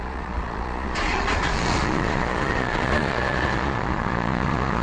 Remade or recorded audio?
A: remade